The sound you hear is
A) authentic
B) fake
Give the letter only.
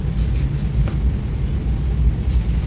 A